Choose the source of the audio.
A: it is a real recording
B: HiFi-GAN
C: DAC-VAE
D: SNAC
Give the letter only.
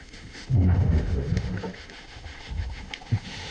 C